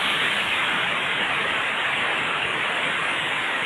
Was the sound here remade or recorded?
remade